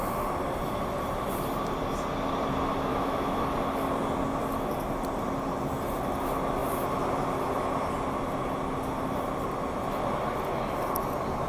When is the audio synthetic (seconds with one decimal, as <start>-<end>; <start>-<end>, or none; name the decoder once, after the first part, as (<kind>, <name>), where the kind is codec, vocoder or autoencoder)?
2.9-3.5 (autoencoder, DAC-VAE)